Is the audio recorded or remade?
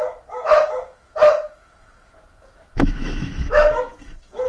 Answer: remade